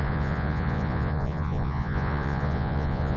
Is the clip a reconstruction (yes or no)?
yes